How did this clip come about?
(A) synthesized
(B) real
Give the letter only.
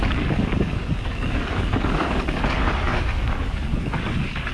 A